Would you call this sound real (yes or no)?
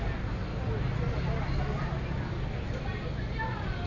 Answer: yes